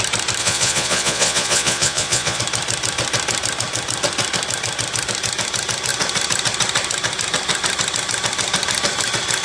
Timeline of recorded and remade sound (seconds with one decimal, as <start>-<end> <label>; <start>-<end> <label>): 0.0-0.4 recorded; 0.4-2.4 remade; 2.4-9.4 recorded